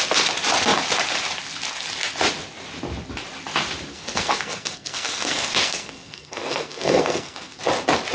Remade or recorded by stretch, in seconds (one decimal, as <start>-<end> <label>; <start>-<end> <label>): 0.0-3.9 recorded; 3.9-7.6 remade; 7.6-8.1 recorded